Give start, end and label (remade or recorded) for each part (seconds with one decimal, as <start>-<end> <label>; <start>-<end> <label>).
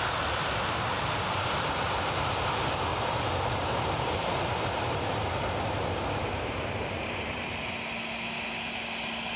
0.0-2.9 recorded; 2.9-7.7 remade; 7.7-9.4 recorded